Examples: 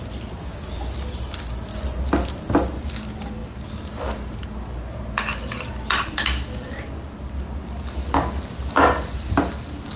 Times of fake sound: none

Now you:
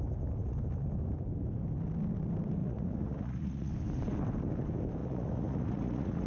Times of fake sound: 2.6-3.7 (vocoder, Vocos); 5.0-6.3

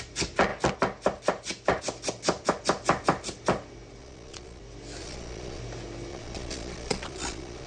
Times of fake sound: 4.0-4.6 (vocoder, Vocos); 5.0-5.6; 6.1-7.7

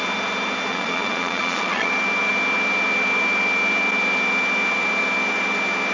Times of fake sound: 0.7-1.9 (vocoder, Vocos)

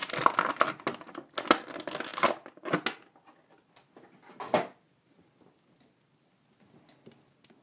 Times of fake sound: none

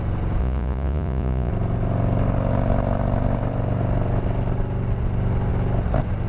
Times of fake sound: 0.4-1.5 (vocoder, Vocos)

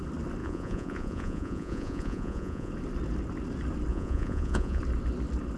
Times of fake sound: 0.4-2.7 (vocoder, Vocos); 3.9-4.8